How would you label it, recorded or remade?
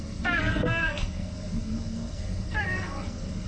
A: remade